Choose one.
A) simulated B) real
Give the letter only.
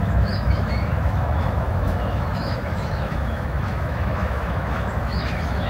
A